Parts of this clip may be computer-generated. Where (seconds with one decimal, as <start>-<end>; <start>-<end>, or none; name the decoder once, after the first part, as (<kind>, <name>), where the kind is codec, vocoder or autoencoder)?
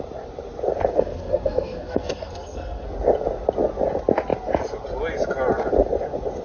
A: 0.9-2.9 (codec, SNAC)